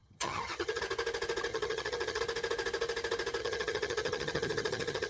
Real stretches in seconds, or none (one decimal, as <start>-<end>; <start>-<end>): 0.8-1.5; 2.2-3.4